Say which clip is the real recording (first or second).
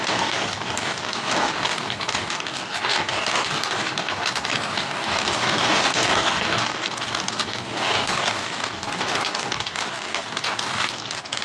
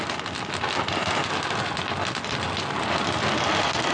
second